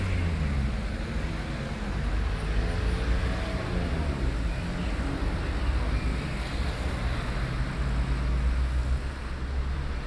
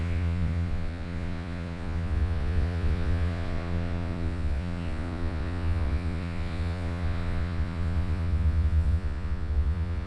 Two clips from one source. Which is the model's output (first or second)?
second